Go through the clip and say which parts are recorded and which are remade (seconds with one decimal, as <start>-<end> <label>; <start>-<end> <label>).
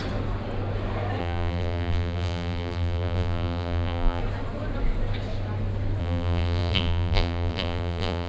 0.0-1.2 recorded; 1.2-4.2 remade; 4.2-6.0 recorded; 6.0-8.3 remade